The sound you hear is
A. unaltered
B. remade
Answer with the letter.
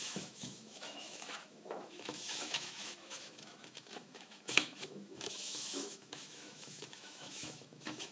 B